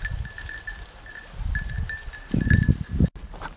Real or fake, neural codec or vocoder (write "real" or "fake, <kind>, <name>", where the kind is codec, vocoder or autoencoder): real